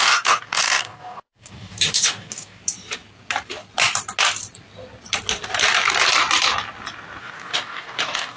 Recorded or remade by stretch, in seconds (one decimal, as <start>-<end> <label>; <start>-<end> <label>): 0.0-2.6 remade; 2.6-7.2 recorded; 7.2-8.4 remade